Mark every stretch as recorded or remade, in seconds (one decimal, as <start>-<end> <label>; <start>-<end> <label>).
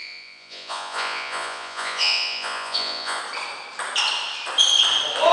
0.0-3.2 remade; 3.2-5.3 recorded